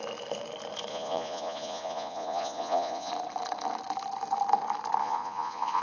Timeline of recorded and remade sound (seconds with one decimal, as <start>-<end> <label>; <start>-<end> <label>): 0.0-0.9 recorded; 0.9-3.1 remade; 3.1-5.0 recorded; 5.0-5.8 remade